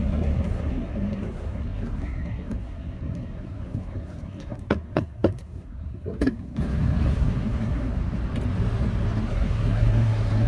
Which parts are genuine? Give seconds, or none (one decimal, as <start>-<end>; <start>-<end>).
8.0-9.3